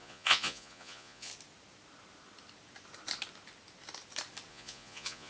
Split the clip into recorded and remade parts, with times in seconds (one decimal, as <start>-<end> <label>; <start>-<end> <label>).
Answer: 0.0-1.3 remade; 1.3-4.5 recorded; 4.5-5.3 remade

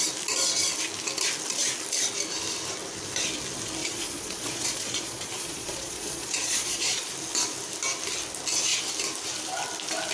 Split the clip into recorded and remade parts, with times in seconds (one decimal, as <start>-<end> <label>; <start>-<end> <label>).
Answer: 0.0-3.8 recorded; 3.8-7.1 remade; 7.1-10.1 recorded

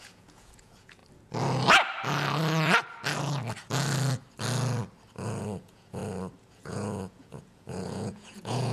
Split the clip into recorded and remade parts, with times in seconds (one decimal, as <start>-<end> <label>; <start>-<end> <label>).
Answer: 0.0-1.0 remade; 1.0-5.4 recorded; 5.4-6.0 remade; 6.0-6.5 recorded; 6.5-8.7 remade

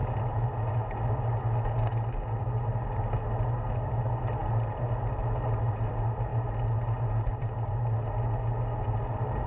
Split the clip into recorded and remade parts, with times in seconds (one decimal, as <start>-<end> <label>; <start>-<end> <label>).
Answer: 0.0-9.5 recorded

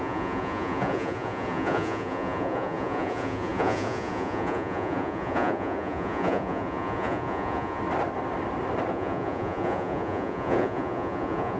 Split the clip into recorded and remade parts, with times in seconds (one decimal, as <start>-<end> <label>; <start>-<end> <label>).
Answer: 0.0-7.8 remade; 7.8-8.9 recorded; 8.9-11.6 remade